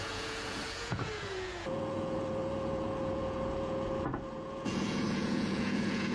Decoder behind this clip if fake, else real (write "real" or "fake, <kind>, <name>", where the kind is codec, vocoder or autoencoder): fake, vocoder, Vocos